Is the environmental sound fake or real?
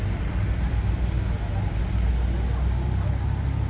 real